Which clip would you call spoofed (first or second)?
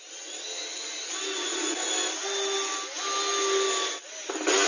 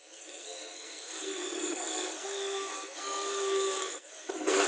second